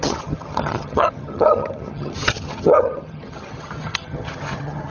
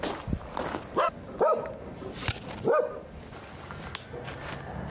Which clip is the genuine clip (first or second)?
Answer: second